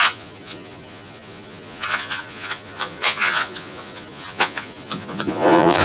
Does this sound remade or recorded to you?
remade